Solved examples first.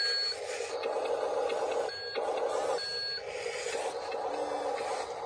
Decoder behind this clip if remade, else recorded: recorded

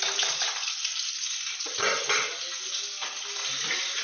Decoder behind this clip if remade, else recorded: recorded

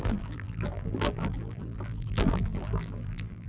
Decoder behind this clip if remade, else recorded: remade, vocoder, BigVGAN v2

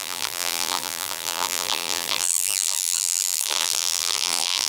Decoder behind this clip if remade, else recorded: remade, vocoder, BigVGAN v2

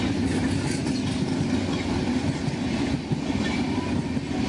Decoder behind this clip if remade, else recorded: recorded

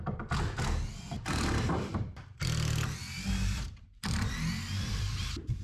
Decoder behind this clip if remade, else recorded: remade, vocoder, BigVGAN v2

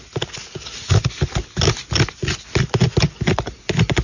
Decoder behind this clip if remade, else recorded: recorded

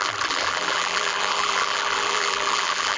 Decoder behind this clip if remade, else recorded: remade, vocoder, BigVGAN v2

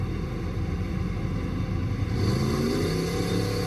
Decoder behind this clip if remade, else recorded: recorded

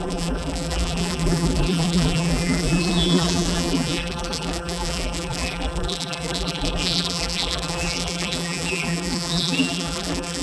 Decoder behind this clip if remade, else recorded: remade, vocoder, BigVGAN v2